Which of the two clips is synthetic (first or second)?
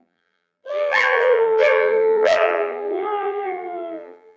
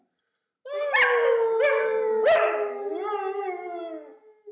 first